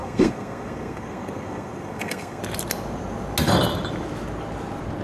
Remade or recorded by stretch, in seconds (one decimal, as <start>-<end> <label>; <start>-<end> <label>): 0.0-2.4 remade; 2.4-5.0 recorded